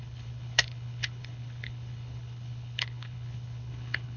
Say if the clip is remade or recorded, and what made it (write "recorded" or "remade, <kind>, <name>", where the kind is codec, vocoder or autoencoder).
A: remade, codec, HILCodec